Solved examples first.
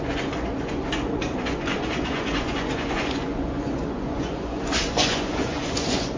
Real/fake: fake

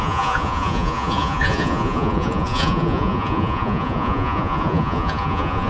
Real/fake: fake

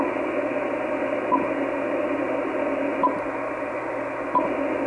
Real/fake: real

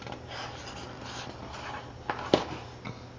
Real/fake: real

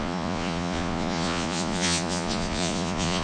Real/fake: fake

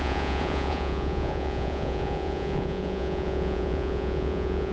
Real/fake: fake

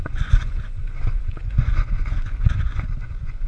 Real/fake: fake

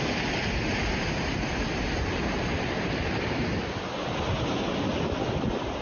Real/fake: real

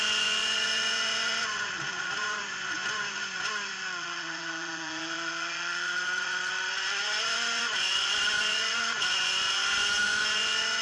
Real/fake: fake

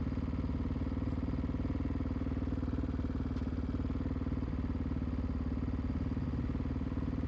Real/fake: real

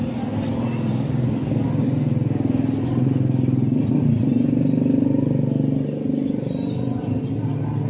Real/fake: real